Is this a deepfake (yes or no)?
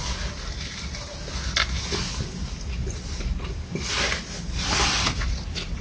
no